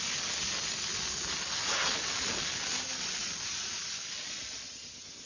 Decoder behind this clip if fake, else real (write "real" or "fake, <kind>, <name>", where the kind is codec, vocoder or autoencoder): real